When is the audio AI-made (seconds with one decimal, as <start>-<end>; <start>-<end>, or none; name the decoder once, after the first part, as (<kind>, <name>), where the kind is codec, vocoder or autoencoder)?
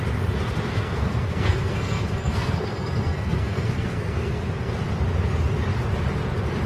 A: 0.7-4.7 (codec, SNAC)